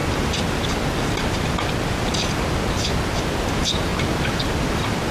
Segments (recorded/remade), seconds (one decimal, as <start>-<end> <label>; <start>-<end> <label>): 0.0-5.1 recorded